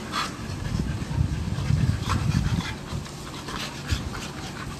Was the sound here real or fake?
real